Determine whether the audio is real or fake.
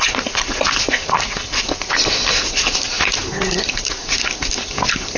real